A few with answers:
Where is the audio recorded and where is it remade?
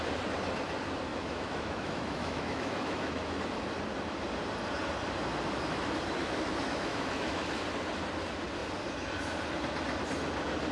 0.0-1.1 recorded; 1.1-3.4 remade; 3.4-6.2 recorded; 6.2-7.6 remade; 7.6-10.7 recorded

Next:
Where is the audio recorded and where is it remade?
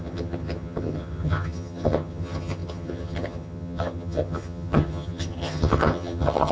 0.0-6.5 remade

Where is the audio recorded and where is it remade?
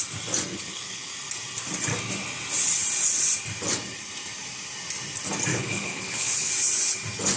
0.0-0.5 recorded; 0.5-1.1 remade; 1.1-5.5 recorded; 5.5-6.5 remade; 6.5-7.4 recorded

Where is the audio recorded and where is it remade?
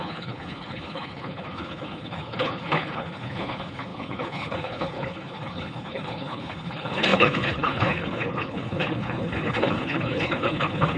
0.0-11.0 remade